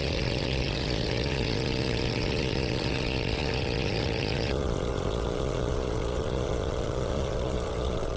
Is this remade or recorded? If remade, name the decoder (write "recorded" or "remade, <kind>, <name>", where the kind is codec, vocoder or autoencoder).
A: remade, vocoder, Vocos